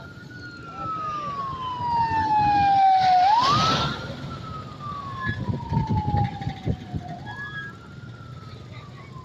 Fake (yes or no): no